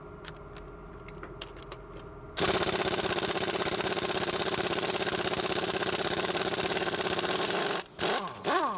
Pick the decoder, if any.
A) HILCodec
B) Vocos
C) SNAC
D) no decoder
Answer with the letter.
D